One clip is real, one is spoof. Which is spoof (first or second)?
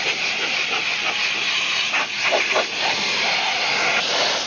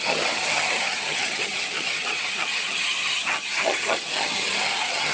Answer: second